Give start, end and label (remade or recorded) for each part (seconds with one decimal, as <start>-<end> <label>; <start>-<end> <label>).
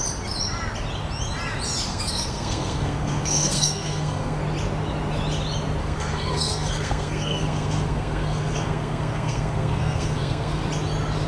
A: 0.0-1.9 recorded; 1.9-4.4 remade; 4.4-5.8 recorded; 5.8-10.6 remade; 10.6-11.3 recorded